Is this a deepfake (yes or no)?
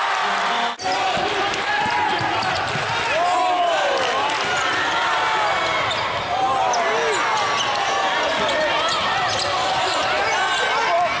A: no